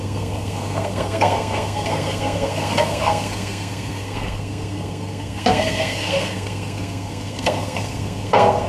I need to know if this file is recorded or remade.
remade